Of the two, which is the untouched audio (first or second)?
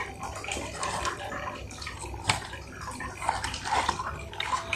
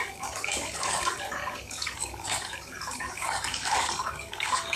first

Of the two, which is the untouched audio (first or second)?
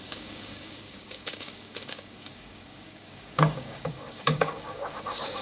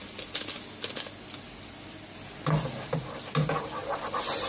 second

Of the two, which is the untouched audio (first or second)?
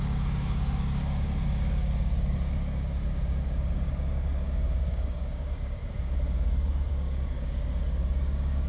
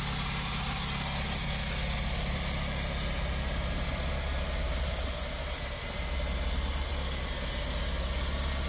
second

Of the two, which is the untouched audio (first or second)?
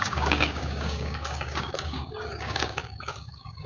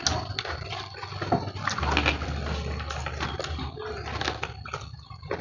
second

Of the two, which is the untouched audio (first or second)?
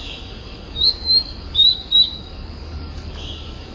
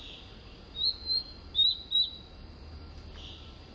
second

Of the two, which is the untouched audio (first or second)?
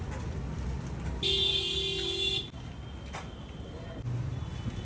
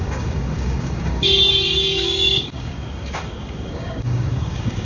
first